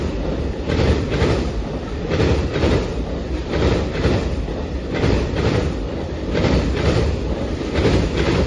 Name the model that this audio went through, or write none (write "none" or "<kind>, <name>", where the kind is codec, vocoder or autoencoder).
vocoder, BigVGAN v2